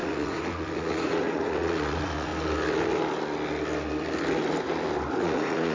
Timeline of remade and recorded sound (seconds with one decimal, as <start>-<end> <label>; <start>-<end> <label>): 0.0-2.3 remade; 2.3-5.1 recorded; 5.1-5.7 remade